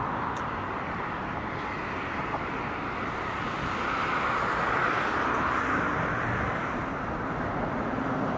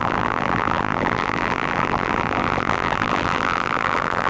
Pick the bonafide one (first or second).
first